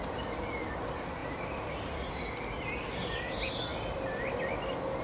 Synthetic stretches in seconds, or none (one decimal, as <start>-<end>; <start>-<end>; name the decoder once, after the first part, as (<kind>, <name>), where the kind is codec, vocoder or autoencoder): 1.2-2.1 (vocoder, BigVGAN v2); 3.7-4.4